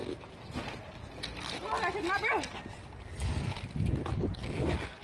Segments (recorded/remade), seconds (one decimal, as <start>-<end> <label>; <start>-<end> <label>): 0.0-5.0 recorded